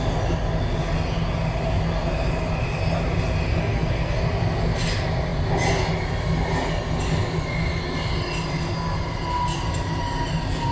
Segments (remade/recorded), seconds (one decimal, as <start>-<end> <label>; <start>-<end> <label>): 0.0-3.5 recorded; 3.5-4.2 remade; 4.2-10.7 recorded